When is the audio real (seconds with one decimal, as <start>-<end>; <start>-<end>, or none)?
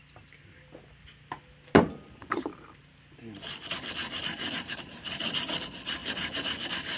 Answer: 0.0-2.2; 3.6-4.0; 5.2-6.0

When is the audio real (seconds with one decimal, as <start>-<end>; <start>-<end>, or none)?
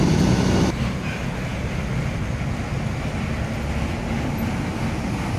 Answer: 0.0-5.4